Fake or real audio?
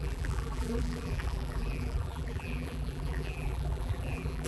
fake